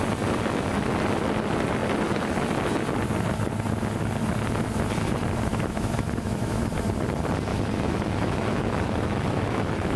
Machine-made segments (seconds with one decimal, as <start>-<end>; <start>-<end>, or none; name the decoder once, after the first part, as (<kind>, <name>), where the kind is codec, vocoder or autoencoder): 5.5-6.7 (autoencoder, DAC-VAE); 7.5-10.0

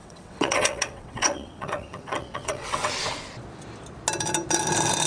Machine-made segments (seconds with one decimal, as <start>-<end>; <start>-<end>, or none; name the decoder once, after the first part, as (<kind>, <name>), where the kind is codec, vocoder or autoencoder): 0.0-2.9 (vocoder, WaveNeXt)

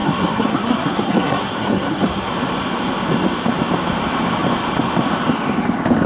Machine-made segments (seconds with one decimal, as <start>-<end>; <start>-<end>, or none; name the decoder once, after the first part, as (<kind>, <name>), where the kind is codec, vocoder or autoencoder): 0.0-2.3 (codec, SNAC)